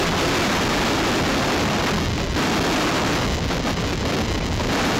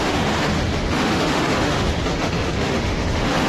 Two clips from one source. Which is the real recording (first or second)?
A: first